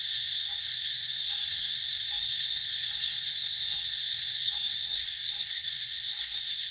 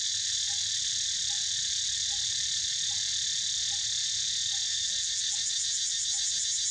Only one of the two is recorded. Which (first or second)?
second